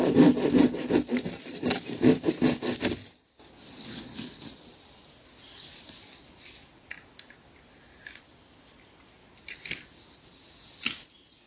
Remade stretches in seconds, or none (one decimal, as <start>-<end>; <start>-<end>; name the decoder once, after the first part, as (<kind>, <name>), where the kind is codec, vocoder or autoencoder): none